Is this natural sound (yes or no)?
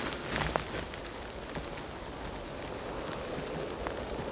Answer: yes